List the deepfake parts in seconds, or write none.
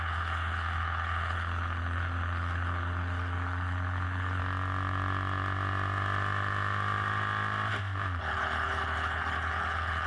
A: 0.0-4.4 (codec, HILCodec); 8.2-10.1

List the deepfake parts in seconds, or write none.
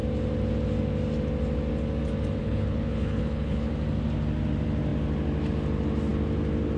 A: 2.4-3.7 (codec, HILCodec)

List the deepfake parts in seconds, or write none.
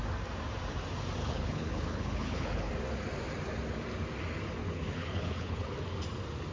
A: 1.2-2.7 (codec, HILCodec); 4.6-5.7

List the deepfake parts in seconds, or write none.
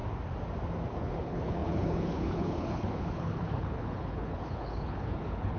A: 0.9-5.6 (codec, HILCodec)